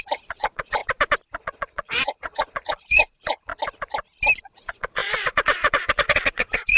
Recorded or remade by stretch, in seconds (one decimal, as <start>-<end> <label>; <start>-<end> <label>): 0.0-0.8 remade; 0.8-1.4 recorded; 1.4-3.5 remade; 3.5-4.4 recorded; 4.4-6.8 remade